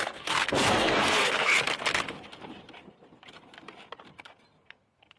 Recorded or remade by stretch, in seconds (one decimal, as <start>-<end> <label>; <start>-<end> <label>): 0.0-1.5 remade; 1.5-4.6 recorded; 4.6-5.2 remade